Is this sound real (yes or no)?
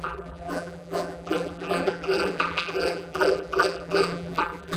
no